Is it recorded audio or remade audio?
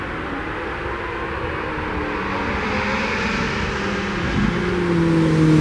recorded